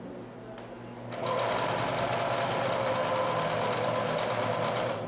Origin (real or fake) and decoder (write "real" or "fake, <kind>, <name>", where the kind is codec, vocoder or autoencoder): real